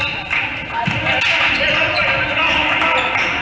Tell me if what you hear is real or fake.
real